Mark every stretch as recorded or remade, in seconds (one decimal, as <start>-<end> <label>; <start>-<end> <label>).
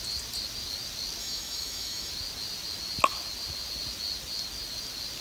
0.0-1.2 recorded; 1.2-2.1 remade; 2.1-5.2 recorded